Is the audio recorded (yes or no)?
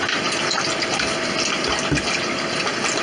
yes